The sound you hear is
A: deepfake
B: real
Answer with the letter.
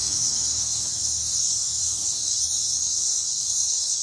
A